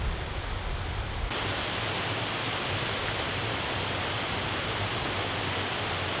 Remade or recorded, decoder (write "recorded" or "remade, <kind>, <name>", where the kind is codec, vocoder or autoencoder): recorded